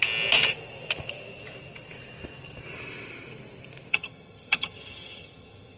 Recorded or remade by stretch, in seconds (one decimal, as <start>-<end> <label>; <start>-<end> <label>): 0.0-3.9 recorded; 3.9-5.8 remade